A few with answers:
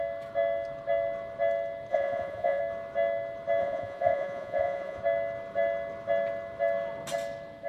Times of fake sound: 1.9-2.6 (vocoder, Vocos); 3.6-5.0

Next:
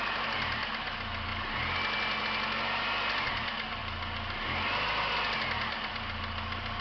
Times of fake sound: none

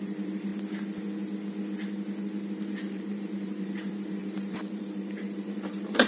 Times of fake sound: 0.0-0.5 (vocoder, BigVGAN v2); 2.7-6.1

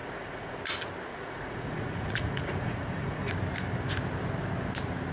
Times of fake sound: 0.0-0.6 (vocoder, Vocos); 1.1-3.3

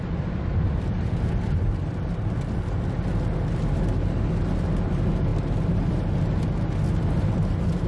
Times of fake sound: 0.5-1.8 (vocoder, BigVGAN v2)